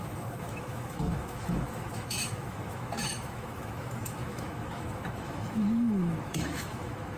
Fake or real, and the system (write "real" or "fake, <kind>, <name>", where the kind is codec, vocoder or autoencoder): fake, autoencoder, DAC-VAE